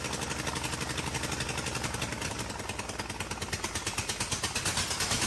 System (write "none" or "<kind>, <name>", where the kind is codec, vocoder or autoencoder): none